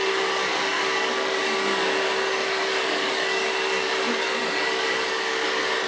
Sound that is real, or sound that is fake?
fake